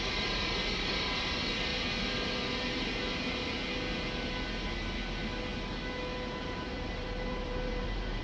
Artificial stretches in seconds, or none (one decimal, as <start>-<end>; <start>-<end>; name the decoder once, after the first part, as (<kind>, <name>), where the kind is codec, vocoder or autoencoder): 0.0-1.7 (vocoder, BigVGAN v2); 6.3-8.2